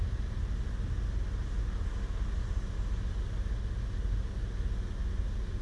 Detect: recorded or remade recorded